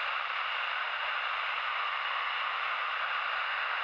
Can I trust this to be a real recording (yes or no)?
yes